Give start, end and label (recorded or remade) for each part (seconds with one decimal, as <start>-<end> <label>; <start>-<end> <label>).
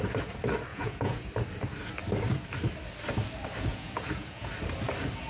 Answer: 0.0-0.7 recorded; 0.7-1.3 remade; 1.3-3.7 recorded; 3.7-4.5 remade; 4.5-5.3 recorded